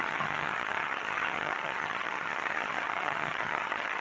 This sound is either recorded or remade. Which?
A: remade